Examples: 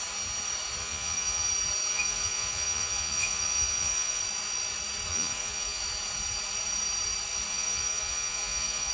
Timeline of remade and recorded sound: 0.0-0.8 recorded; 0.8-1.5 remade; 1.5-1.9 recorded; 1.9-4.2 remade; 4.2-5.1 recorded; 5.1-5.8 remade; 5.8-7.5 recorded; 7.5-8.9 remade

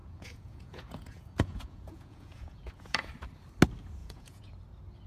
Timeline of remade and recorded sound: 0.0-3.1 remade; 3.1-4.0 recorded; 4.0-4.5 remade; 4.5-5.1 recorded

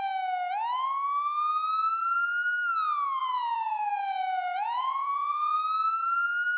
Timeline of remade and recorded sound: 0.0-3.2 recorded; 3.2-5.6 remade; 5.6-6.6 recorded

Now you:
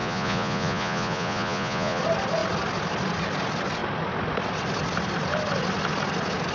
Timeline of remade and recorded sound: 0.0-2.0 remade; 2.0-6.5 recorded

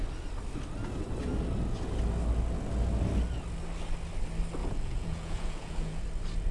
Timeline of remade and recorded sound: 0.0-4.6 recorded; 4.6-6.0 remade; 6.0-6.5 recorded

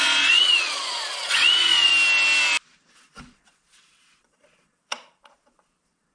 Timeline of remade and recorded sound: 0.0-1.9 remade; 1.9-2.9 recorded; 2.9-6.1 remade

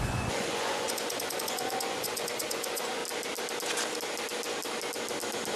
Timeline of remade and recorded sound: 0.0-3.0 remade; 3.0-5.6 recorded